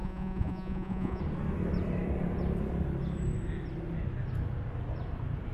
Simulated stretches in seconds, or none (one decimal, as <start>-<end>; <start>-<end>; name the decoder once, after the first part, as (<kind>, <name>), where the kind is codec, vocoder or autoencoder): 0.0-1.2 (vocoder, Vocos)